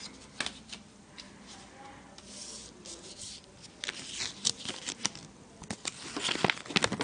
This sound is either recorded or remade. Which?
recorded